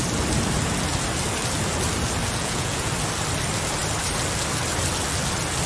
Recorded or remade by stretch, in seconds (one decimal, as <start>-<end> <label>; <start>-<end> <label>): 0.0-2.2 recorded; 2.2-2.9 remade; 2.9-5.7 recorded